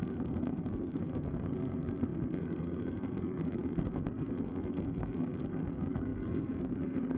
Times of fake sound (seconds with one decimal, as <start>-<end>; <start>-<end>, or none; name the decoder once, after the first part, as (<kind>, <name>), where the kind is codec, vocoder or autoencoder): 0.0-7.2 (codec, SNAC)